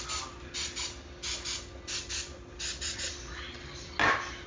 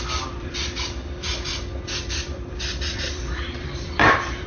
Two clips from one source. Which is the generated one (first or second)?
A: second